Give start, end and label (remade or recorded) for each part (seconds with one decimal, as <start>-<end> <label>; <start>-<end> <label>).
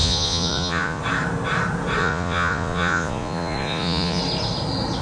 0.0-1.0 remade; 1.0-2.0 recorded; 2.0-4.2 remade; 4.2-5.0 recorded